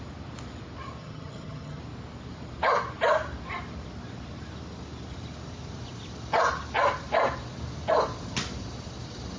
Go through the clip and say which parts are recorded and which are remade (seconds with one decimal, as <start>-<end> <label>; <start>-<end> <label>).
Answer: 0.0-1.0 recorded; 1.0-1.8 remade; 1.8-9.4 recorded